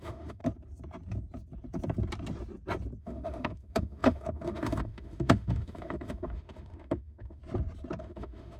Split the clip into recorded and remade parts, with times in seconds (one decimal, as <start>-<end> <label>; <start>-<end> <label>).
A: 0.0-0.4 remade; 0.4-3.0 recorded; 3.0-7.4 remade; 7.4-8.0 recorded; 8.0-8.6 remade